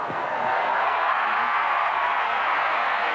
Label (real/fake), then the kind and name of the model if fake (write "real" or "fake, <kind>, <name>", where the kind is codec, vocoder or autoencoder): fake, codec, SNAC